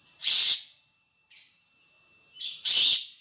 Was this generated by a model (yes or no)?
yes